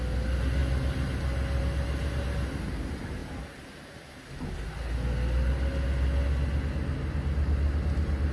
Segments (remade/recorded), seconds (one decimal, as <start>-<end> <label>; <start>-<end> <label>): 0.0-8.3 recorded